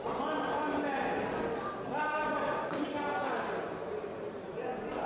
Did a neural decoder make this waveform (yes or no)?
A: no